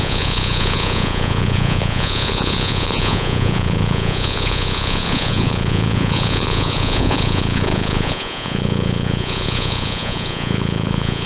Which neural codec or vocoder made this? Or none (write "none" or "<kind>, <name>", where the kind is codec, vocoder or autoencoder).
vocoder, Vocos